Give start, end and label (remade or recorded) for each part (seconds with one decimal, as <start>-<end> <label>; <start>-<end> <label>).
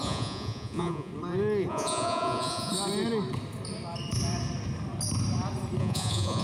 0.0-1.1 remade; 1.1-1.7 recorded; 1.7-2.7 remade; 2.7-5.8 recorded; 5.8-6.4 remade